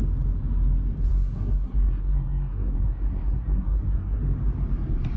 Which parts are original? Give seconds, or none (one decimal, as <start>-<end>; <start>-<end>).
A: 0.0-1.1; 4.2-5.2